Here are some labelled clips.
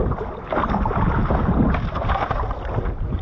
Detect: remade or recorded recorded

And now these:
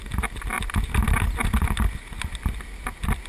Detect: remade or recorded recorded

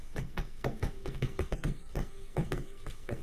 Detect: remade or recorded remade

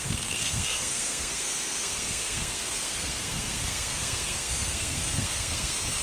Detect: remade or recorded remade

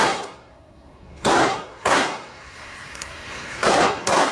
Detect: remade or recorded remade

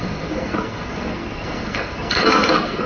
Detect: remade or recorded remade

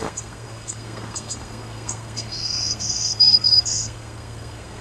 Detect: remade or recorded remade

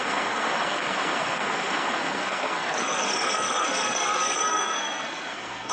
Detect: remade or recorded remade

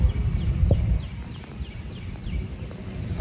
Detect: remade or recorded recorded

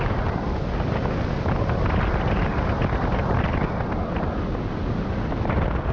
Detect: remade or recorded recorded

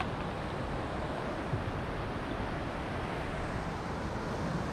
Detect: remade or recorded recorded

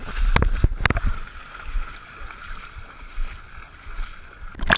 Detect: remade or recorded recorded